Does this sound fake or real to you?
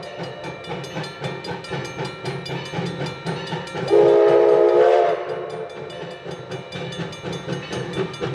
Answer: real